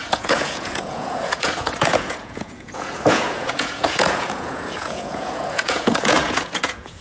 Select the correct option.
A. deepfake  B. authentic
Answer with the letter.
A